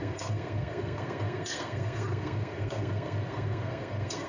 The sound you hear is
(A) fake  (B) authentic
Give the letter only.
A